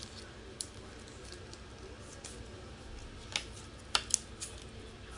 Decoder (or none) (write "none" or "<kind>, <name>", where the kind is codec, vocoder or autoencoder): none